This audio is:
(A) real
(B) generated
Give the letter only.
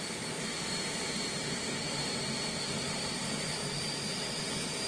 A